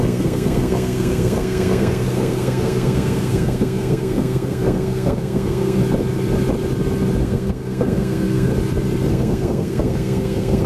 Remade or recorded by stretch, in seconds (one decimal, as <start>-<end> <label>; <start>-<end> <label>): 0.0-5.8 remade; 5.8-7.2 recorded; 7.2-8.5 remade; 8.5-9.1 recorded; 9.1-10.7 remade